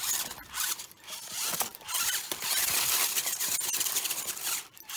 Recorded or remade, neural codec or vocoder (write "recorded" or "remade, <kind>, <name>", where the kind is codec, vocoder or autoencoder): remade, vocoder, BigVGAN v2